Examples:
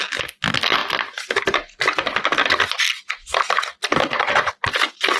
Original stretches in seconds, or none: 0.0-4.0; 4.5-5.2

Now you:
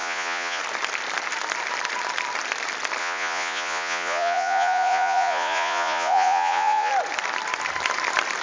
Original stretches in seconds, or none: 0.6-3.0; 6.9-8.4